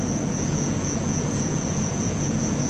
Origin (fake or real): fake